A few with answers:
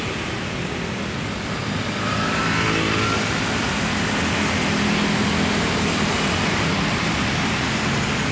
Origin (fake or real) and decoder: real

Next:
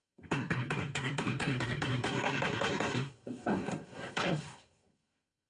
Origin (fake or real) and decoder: fake, codec, SNAC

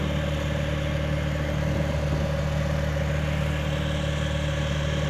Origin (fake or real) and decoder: real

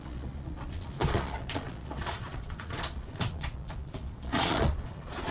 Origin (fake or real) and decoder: fake, vocoder, Vocos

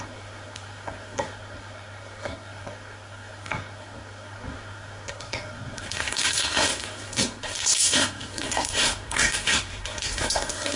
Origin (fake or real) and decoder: fake, codec, SNAC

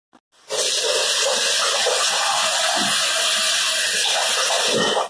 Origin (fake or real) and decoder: real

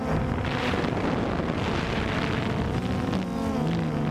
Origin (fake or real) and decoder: real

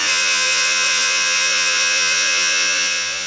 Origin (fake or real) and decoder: fake, vocoder, Vocos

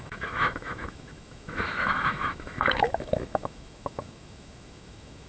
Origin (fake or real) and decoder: fake, autoencoder, DAC-VAE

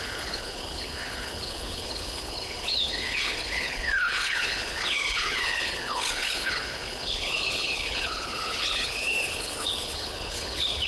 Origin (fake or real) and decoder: fake, codec, HILCodec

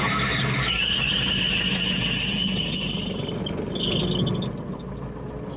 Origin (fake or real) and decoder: real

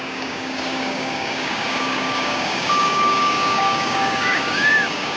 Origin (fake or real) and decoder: fake, codec, DAC